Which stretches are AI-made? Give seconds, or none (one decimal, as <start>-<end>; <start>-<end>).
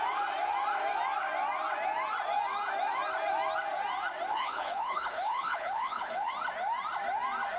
4.3-6.3